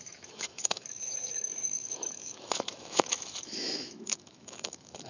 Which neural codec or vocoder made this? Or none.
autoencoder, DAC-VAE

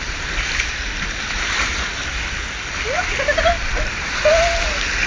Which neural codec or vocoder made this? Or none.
none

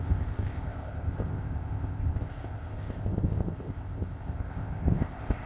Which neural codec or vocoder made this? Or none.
codec, ZipCodec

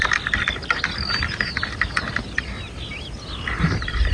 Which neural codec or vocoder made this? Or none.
none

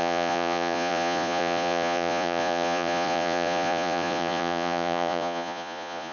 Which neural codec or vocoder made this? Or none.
vocoder, Vocos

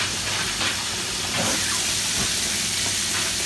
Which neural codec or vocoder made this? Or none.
none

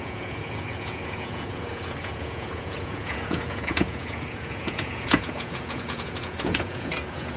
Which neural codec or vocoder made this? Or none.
vocoder, Vocos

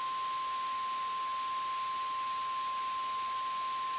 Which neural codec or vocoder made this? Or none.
none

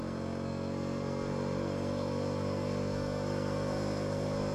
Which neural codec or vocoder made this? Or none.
codec, SNAC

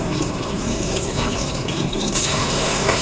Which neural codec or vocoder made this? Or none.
codec, SNAC